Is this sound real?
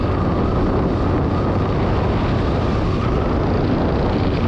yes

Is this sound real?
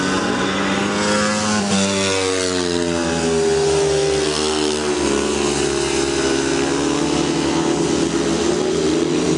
yes